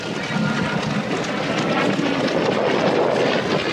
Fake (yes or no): no